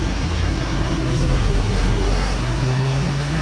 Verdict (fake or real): fake